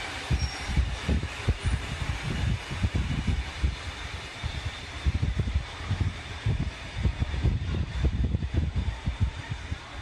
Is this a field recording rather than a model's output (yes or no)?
no